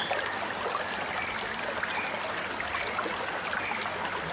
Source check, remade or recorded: recorded